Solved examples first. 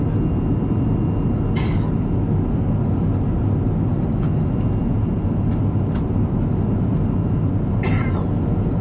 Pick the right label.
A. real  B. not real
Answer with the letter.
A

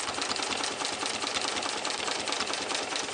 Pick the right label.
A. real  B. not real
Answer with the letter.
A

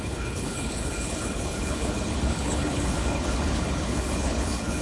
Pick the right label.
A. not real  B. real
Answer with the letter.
A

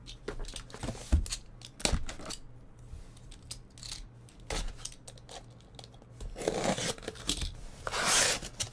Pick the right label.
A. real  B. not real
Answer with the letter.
A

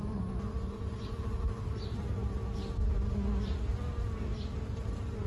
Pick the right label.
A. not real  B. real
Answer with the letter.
B